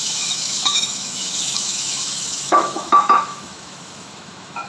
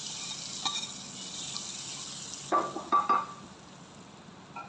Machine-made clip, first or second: first